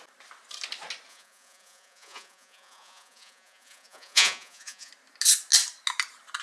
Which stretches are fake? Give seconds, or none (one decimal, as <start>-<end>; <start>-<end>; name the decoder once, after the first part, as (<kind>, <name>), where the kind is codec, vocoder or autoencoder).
1.1-4.9 (vocoder, Vocos)